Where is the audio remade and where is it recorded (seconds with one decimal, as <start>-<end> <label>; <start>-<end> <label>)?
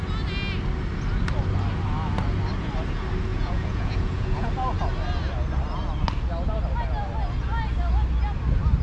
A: 0.0-3.3 recorded; 3.3-4.5 remade; 4.5-8.8 recorded